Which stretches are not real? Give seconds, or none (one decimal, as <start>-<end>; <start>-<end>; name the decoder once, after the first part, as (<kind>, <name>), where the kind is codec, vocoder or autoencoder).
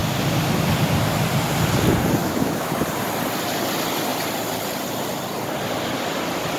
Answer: 2.2-2.7 (autoencoder, DAC-VAE)